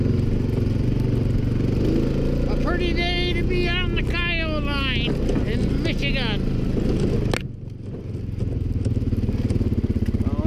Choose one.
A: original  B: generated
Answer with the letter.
A